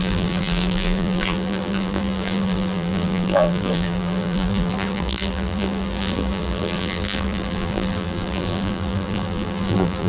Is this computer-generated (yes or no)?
yes